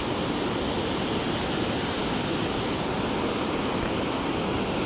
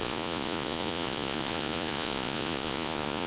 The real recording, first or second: first